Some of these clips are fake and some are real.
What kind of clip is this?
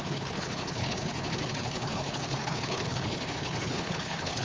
fake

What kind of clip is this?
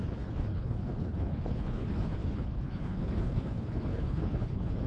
fake